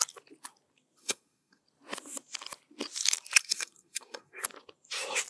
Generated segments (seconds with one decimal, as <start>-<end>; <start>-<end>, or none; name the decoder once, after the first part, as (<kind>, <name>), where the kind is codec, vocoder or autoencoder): 1.0-1.6 (codec, SNAC); 3.4-4.4